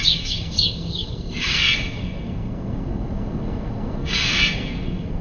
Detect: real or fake fake